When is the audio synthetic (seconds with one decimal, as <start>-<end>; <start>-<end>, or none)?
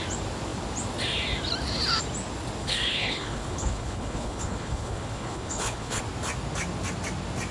2.6-6.0